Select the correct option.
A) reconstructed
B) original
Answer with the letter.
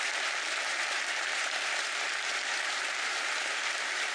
A